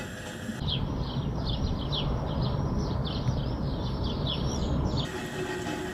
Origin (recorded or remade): recorded